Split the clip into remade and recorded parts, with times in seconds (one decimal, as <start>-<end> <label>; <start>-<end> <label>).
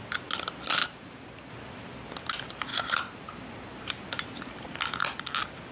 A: 0.0-0.8 recorded; 0.8-1.5 remade; 1.5-2.7 recorded; 2.7-4.1 remade; 4.1-5.7 recorded